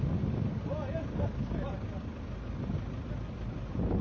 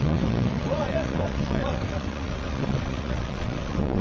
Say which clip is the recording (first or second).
first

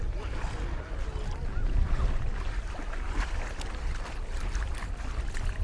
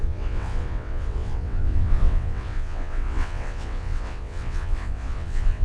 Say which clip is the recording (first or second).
first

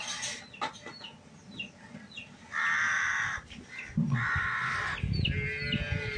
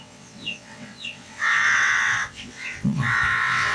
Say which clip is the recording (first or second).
first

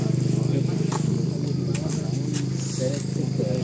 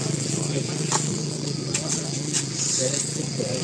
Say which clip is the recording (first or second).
first